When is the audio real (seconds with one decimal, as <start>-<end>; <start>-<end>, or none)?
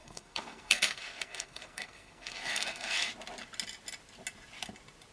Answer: 3.1-5.1